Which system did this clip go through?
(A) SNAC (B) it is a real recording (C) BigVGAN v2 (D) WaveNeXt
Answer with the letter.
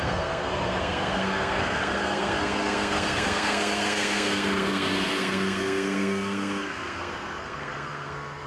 A